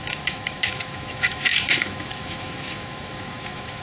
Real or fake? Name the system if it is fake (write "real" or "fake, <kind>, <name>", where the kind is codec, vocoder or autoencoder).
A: fake, autoencoder, DAC-VAE